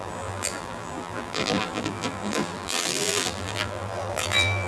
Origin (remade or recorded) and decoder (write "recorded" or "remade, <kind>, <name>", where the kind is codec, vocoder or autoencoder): remade, vocoder, BigVGAN v2